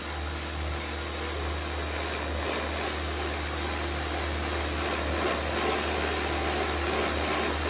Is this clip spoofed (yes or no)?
no